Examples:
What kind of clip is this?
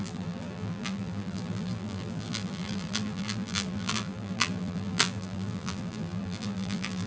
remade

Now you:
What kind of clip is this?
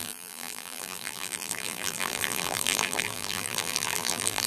remade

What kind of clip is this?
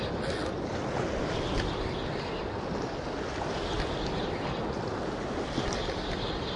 recorded